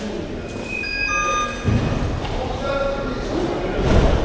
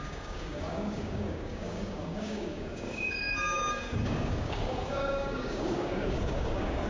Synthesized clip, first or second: second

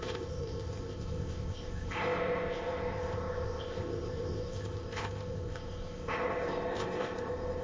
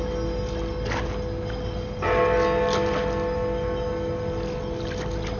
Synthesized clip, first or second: first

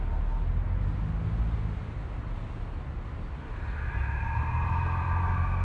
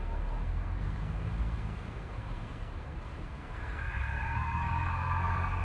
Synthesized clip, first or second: second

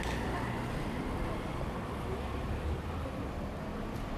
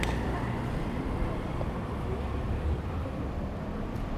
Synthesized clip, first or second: second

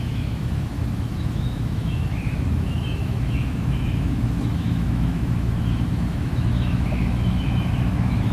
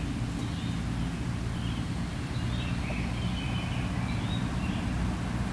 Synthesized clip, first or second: first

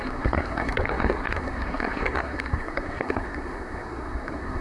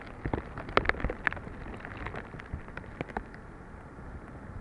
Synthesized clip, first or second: first